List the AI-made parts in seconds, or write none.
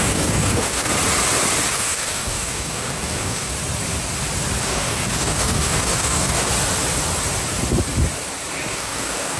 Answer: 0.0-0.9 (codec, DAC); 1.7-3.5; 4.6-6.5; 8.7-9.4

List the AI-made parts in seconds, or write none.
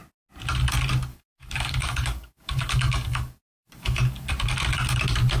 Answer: 1.1-4.3 (codec, DAC)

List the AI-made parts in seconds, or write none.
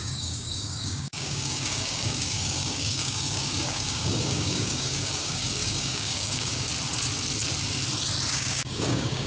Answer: 0.0-6.7 (codec, DAC); 8.3-9.3